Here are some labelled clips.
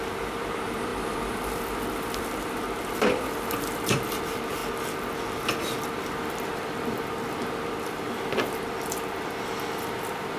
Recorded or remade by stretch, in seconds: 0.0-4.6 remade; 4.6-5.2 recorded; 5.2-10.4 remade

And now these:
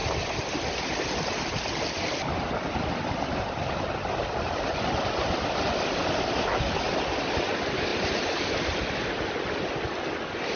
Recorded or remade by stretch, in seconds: 0.0-7.9 recorded; 7.9-9.1 remade; 9.1-10.6 recorded

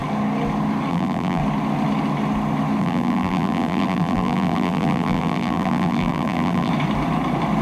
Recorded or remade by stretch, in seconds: 0.0-0.9 recorded; 0.9-1.4 remade; 1.4-2.8 recorded; 2.8-6.7 remade; 6.7-7.6 recorded

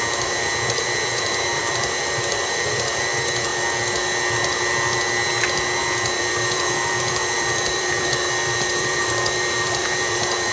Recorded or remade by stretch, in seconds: 0.0-3.5 remade; 3.5-6.2 recorded; 6.2-10.5 remade

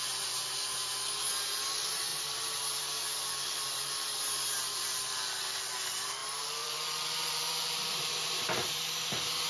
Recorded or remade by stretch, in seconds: 0.0-2.1 recorded; 2.1-5.6 remade; 5.6-6.2 recorded; 6.2-8.8 remade; 8.8-9.5 recorded

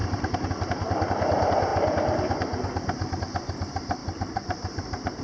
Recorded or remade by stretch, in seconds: 0.0-0.5 remade; 0.5-4.0 recorded; 4.0-5.2 remade

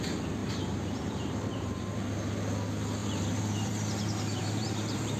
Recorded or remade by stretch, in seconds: 0.0-0.4 recorded; 0.4-1.9 remade; 1.9-3.0 recorded; 3.0-3.7 remade; 3.7-4.4 recorded; 4.4-5.2 remade

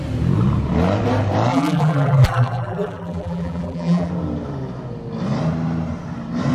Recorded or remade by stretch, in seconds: 0.0-1.5 recorded; 1.5-4.1 remade; 4.1-6.5 recorded